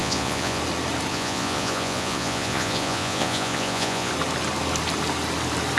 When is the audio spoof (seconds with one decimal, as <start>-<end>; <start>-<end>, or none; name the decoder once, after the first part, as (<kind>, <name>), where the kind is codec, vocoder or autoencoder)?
0.0-0.6 (vocoder, Vocos); 1.1-4.1